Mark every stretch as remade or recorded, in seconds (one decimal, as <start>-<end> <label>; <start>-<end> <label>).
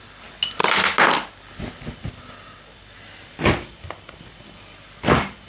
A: 0.0-5.5 recorded